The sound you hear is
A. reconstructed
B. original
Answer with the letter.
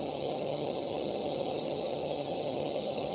A